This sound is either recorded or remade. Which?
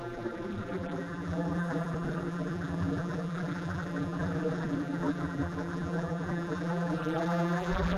remade